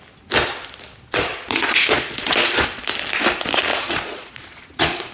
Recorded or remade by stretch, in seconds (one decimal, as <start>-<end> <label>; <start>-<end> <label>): 0.0-1.3 recorded; 1.3-2.8 remade; 2.8-3.7 recorded; 3.7-5.1 remade